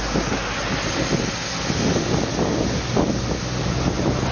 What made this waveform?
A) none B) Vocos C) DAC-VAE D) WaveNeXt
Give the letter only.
A